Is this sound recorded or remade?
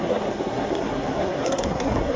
remade